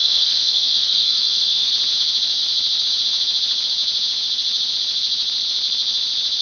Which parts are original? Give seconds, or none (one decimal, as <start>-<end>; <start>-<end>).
1.7-6.4